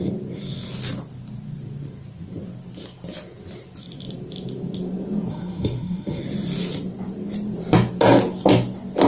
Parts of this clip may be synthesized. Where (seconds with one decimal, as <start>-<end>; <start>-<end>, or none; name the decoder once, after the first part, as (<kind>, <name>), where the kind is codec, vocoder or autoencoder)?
5.3-6.2 (codec, SNAC)